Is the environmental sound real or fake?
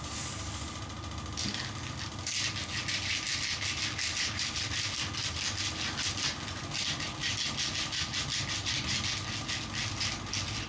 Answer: real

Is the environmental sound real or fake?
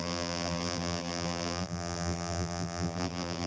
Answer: fake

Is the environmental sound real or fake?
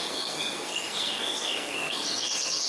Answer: fake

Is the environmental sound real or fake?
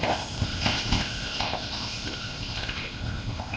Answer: fake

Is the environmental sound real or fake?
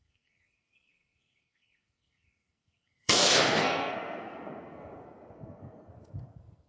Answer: fake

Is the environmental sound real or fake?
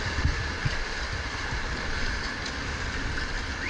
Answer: real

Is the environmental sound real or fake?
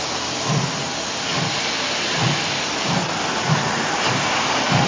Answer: real